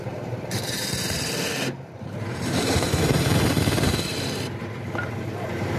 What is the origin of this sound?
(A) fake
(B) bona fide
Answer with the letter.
A